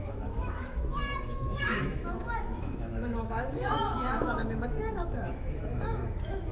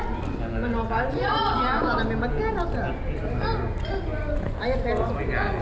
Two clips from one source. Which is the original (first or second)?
second